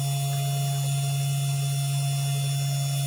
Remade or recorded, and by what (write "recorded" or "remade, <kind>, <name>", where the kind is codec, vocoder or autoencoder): recorded